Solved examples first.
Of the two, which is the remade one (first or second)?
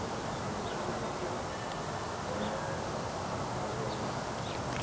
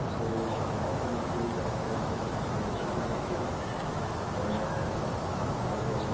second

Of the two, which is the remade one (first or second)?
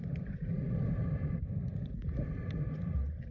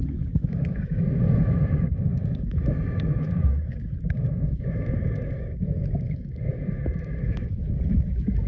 second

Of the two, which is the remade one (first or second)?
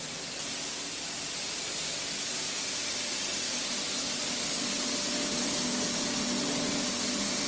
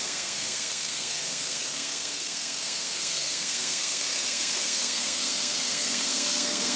second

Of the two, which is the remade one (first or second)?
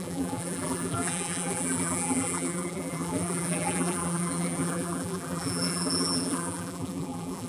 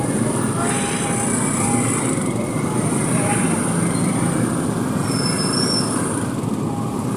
first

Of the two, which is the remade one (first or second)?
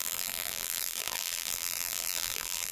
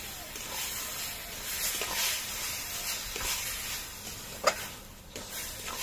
first